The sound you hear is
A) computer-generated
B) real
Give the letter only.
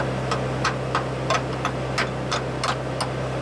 B